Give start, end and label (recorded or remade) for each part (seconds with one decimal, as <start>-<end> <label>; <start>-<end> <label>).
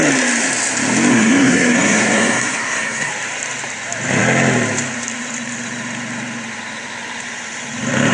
0.0-1.1 recorded; 1.1-3.1 remade; 3.1-8.1 recorded